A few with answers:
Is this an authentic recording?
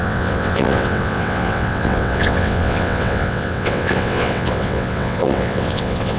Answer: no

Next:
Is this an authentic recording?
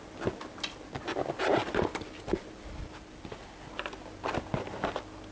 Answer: yes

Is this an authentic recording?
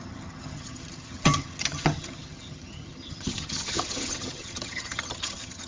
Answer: no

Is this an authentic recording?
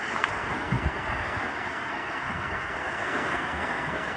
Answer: no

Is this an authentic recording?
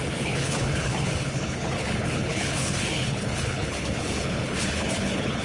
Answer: no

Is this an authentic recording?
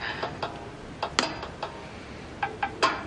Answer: yes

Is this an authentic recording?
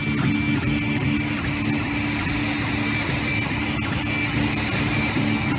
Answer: yes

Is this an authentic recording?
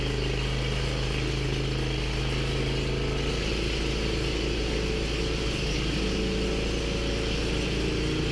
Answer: yes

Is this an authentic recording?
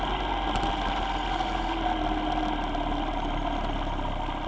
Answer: yes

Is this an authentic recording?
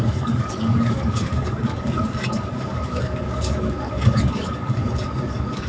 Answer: no